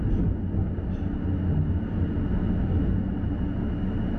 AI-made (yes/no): no